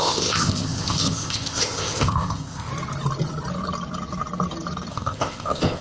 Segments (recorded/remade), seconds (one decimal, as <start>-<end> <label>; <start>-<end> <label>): 0.0-2.7 remade; 2.7-4.9 recorded; 4.9-5.8 remade